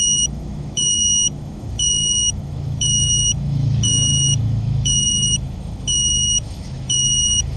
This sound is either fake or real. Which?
fake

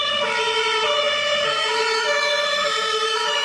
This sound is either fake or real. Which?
fake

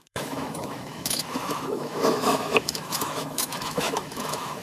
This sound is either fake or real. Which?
fake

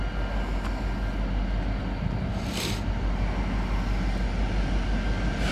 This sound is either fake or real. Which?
real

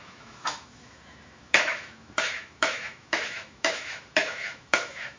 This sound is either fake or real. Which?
fake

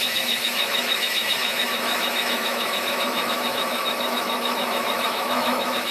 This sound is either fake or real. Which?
fake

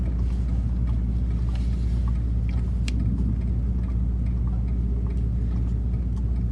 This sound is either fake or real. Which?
real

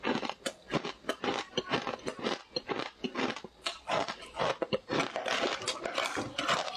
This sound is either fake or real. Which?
real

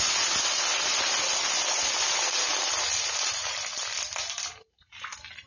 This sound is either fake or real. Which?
real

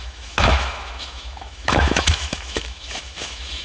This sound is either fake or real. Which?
fake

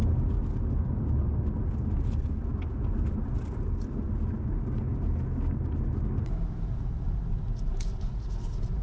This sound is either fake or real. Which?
real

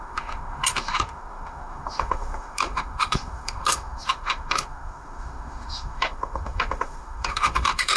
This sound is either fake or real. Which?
fake